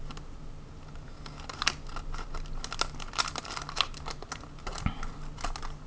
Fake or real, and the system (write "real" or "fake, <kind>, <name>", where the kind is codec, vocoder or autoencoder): real